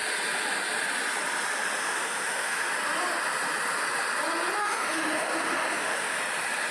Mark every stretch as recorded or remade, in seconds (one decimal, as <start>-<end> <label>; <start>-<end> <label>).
0.0-1.8 recorded; 1.8-2.7 remade; 2.7-4.6 recorded; 4.6-6.2 remade; 6.2-6.7 recorded